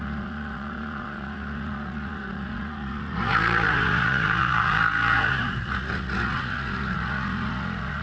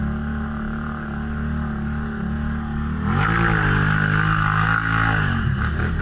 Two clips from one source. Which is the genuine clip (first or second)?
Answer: second